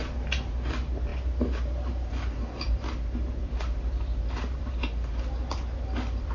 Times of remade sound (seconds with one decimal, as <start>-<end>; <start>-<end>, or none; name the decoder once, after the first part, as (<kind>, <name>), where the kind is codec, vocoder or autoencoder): 0.0-6.3 (vocoder, BigVGAN v2)